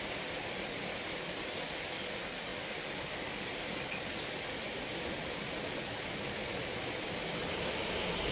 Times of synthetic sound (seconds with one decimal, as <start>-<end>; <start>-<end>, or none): 0.0-8.3